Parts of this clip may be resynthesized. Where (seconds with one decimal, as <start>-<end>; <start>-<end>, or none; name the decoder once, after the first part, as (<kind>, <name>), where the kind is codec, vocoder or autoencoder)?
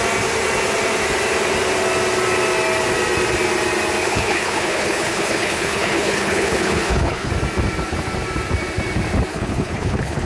4.0-7.3 (codec, HILCodec); 9.3-10.3